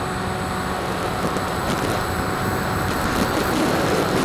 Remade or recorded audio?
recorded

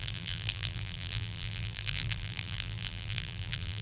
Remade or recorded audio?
remade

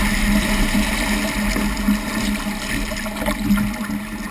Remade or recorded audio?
recorded